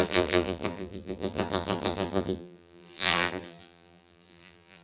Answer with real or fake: fake